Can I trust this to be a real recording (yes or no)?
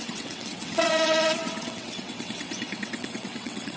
no